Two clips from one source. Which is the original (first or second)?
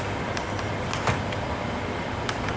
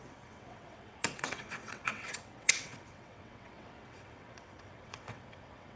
first